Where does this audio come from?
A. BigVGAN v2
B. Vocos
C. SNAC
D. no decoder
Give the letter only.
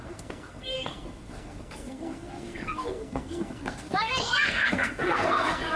C